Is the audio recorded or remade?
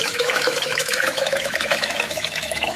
remade